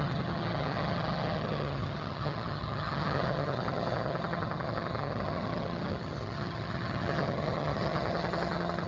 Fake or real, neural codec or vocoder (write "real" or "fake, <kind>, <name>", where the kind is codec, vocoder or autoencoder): fake, vocoder, HiFi-GAN